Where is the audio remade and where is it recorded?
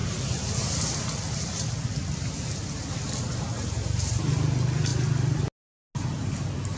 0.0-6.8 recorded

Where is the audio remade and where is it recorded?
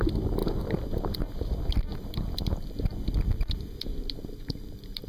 0.0-3.9 recorded; 3.9-5.1 remade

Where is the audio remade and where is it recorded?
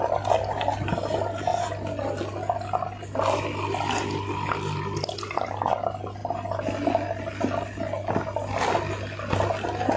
0.0-10.0 recorded